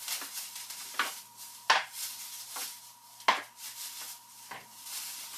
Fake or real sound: real